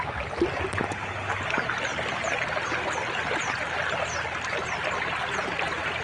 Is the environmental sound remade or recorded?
recorded